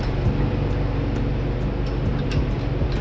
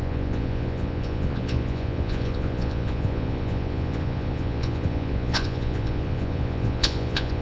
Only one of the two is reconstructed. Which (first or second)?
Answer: second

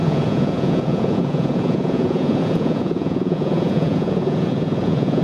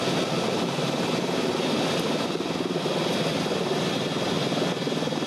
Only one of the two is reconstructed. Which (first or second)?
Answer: first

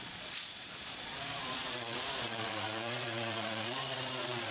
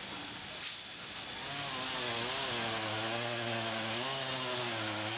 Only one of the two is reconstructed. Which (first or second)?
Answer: first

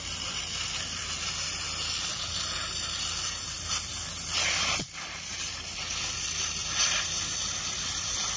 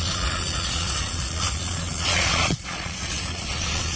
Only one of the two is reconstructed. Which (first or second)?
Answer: second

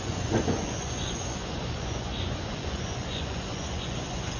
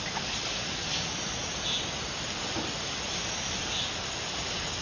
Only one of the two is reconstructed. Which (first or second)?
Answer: first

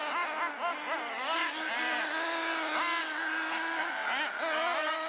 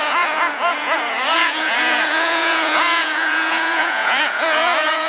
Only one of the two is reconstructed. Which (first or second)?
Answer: second